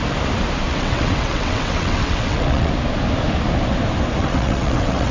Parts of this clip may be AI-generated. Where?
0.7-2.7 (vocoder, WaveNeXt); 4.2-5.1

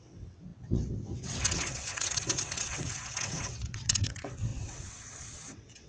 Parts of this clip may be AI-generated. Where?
0.0-5.9 (vocoder, WaveNeXt)

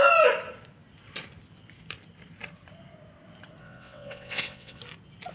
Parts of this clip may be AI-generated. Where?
3.6-4.8 (vocoder, WaveNeXt)

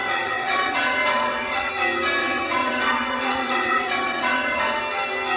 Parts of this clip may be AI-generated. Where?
0.0-1.7 (vocoder, WaveNeXt); 2.2-4.8

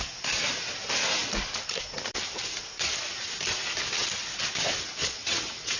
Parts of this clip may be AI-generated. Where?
5.0-5.8 (vocoder, WaveNeXt)

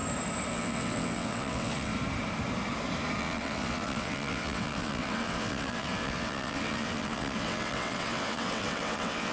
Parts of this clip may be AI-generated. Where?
0.5-1.9 (vocoder, WaveNeXt); 3.2-9.3